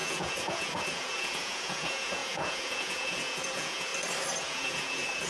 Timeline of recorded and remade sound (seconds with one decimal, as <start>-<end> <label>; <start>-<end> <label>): 0.0-3.9 remade; 3.9-4.4 recorded; 4.4-5.3 remade